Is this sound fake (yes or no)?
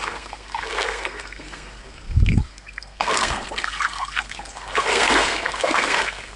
yes